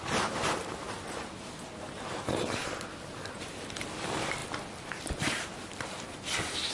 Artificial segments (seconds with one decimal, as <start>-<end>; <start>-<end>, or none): 2.6-3.5; 4.4-5.8